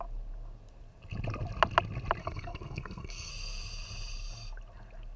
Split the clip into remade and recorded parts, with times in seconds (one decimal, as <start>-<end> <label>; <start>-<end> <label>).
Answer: 0.0-2.2 recorded; 2.2-3.3 remade; 3.3-5.2 recorded